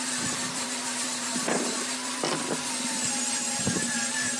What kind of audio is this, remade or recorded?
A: remade